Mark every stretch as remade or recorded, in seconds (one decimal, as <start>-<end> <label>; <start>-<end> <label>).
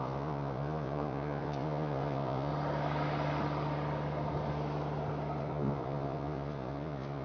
0.0-2.5 remade; 2.5-5.4 recorded; 5.4-7.2 remade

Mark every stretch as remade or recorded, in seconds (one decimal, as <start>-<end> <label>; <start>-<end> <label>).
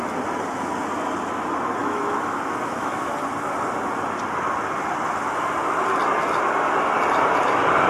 0.0-1.8 recorded; 1.8-3.1 remade; 3.1-7.9 recorded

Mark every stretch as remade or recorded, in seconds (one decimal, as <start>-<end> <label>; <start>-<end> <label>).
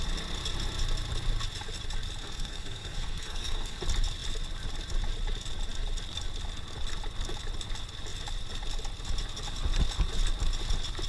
0.0-2.2 recorded; 2.2-3.8 remade; 3.8-11.1 recorded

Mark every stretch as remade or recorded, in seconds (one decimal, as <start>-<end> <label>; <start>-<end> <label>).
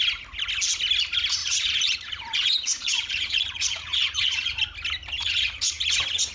0.0-1.4 recorded; 1.4-4.6 remade; 4.6-5.2 recorded; 5.2-5.8 remade; 5.8-6.3 recorded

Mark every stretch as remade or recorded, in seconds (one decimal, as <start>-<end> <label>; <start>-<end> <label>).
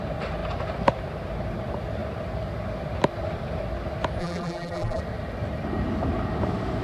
0.0-4.2 recorded; 4.2-5.0 remade; 5.0-6.8 recorded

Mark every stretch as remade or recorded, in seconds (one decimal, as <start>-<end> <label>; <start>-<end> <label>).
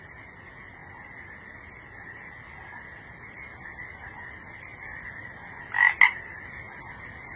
0.0-7.4 recorded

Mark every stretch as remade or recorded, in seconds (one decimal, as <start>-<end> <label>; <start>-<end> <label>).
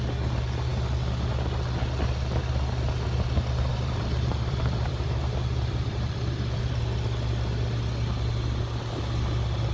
0.0-3.7 recorded; 3.7-6.8 remade; 6.8-9.7 recorded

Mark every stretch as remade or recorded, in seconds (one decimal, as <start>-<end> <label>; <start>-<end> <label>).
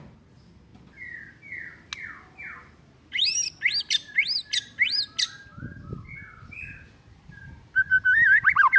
0.0-8.8 recorded